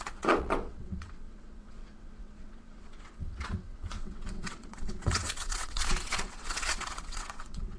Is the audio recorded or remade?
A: remade